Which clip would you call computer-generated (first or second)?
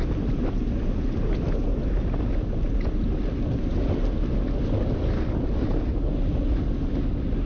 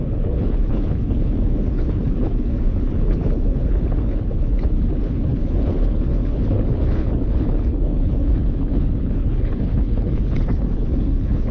second